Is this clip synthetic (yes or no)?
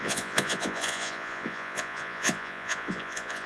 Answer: yes